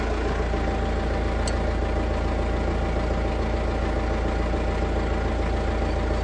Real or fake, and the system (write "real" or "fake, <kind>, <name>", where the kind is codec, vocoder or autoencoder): real